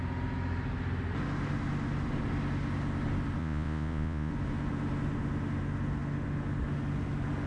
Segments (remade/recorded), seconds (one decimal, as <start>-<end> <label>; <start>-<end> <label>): 0.0-3.4 recorded; 3.4-4.3 remade; 4.3-7.5 recorded